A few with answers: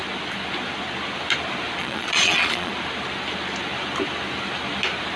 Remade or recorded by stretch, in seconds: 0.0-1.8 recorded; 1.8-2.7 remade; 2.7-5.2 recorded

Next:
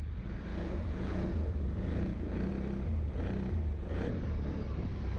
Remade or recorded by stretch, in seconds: 0.0-0.5 recorded; 0.5-2.5 remade; 2.5-5.2 recorded

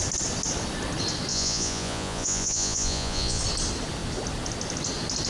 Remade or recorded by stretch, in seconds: 0.0-1.3 recorded; 1.3-3.4 remade; 3.4-5.3 recorded

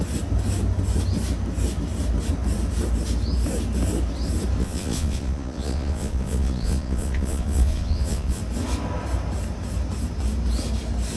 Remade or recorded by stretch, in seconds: 0.0-4.6 recorded; 4.6-8.4 remade; 8.4-11.2 recorded

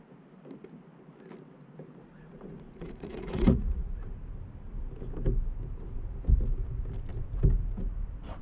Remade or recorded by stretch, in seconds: 0.0-2.1 recorded; 2.1-4.0 remade; 4.0-8.4 recorded

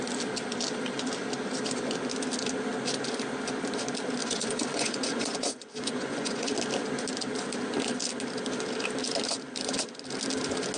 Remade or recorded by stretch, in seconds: 0.0-4.2 recorded; 4.2-6.5 remade; 6.5-10.8 recorded

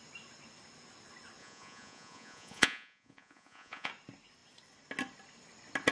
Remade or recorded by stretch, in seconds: 0.0-1.4 recorded; 1.4-3.9 remade; 3.9-5.9 recorded